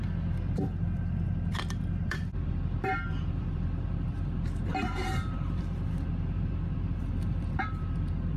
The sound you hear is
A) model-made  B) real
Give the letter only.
A